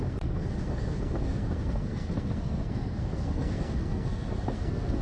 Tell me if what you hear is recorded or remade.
remade